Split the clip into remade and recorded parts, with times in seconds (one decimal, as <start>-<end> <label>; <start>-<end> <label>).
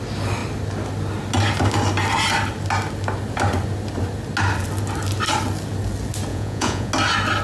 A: 0.0-6.3 recorded; 6.3-6.9 remade; 6.9-7.4 recorded